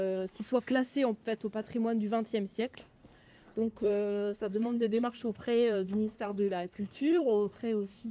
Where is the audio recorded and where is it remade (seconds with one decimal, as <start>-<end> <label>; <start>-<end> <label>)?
0.0-0.9 remade; 0.9-2.6 recorded; 2.6-8.1 remade